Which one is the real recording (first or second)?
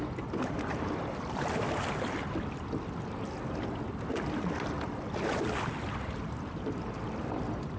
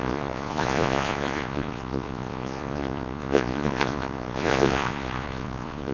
first